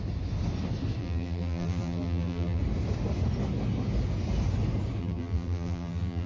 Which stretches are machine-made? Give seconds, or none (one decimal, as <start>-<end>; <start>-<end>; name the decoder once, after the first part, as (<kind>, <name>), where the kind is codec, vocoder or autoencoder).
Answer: 1.0-2.6 (vocoder, BigVGAN v2); 5.0-6.3